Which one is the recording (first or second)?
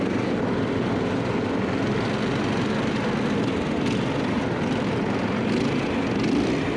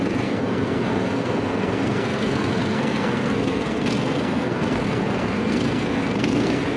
first